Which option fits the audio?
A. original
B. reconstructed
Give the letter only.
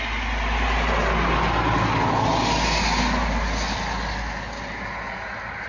A